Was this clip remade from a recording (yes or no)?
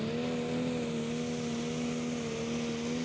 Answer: no